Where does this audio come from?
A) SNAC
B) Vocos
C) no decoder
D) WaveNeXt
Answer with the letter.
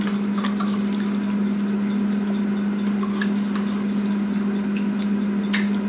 C